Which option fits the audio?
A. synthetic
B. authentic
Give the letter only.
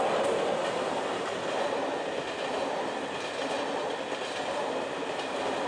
B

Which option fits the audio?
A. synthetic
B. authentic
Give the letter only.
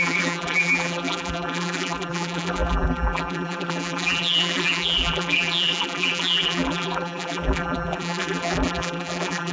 A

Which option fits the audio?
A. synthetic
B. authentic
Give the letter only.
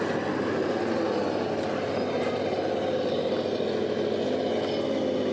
B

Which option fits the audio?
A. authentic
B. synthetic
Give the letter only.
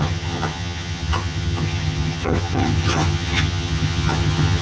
B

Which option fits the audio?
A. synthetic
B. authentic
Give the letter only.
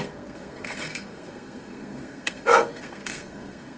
A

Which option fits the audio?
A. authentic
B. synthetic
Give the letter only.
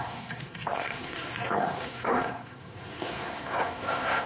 B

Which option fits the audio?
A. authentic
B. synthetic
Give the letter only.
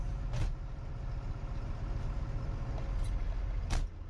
A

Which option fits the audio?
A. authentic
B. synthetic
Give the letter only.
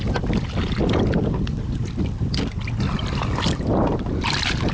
A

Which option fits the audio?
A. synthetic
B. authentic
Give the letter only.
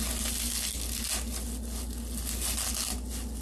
B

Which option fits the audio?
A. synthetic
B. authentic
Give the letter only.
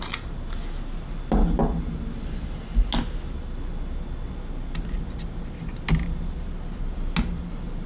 B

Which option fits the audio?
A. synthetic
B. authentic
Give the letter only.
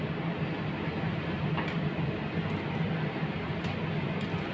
B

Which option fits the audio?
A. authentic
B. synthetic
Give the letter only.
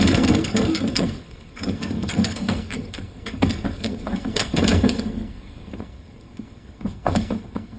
B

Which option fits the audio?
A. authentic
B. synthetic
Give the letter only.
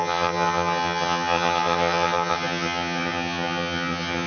B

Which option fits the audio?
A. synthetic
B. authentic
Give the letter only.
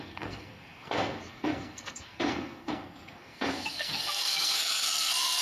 A